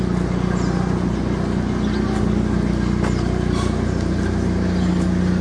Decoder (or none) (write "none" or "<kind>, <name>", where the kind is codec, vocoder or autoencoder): none